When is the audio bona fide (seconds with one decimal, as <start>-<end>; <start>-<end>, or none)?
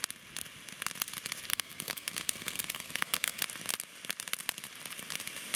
0.0-1.5; 3.4-5.6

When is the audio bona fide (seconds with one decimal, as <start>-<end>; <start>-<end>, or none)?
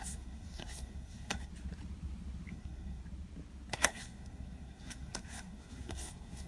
1.5-2.5; 3.0-3.7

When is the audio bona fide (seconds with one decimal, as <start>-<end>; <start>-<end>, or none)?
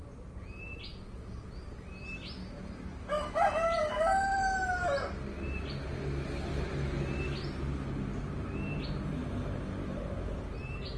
0.0-11.0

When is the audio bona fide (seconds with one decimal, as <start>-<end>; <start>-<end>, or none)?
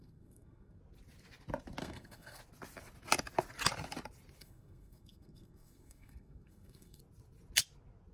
0.8-1.8; 2.4-4.4; 7.0-8.1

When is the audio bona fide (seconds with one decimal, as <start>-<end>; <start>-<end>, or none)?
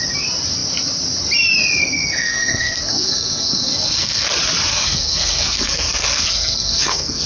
0.0-1.8; 4.3-4.7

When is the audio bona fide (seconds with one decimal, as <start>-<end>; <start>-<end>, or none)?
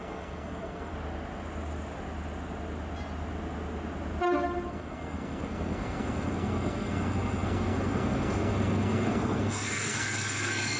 0.9-4.7